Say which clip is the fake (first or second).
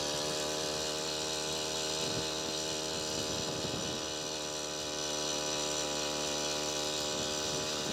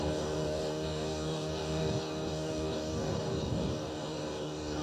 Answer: second